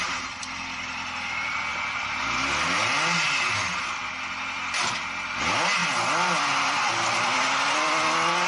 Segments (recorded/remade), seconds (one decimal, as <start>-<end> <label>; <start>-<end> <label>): 0.0-8.5 recorded